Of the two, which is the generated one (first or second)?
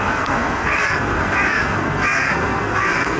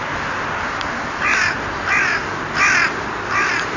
first